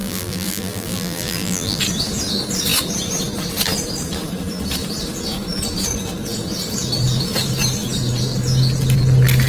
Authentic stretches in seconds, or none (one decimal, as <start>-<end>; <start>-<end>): 1.8-9.5